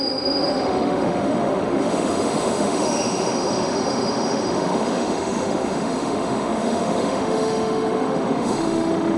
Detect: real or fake fake